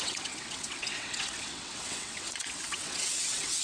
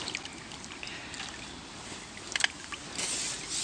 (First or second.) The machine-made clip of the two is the first